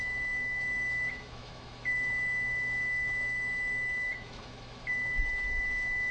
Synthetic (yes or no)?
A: yes